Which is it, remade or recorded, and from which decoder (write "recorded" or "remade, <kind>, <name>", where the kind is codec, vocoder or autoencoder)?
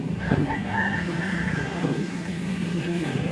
remade, codec, SNAC